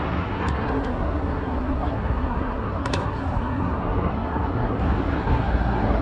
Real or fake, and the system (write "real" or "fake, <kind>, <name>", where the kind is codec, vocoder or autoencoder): fake, codec, SNAC